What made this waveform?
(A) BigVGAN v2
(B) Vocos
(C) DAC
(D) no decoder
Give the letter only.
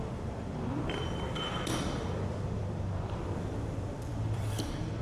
A